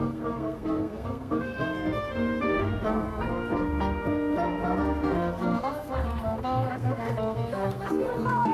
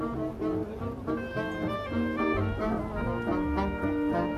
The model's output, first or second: first